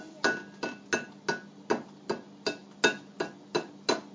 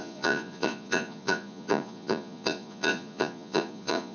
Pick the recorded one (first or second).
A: first